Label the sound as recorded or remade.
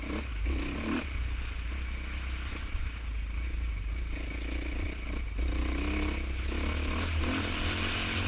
recorded